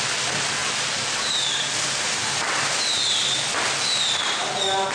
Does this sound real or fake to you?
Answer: real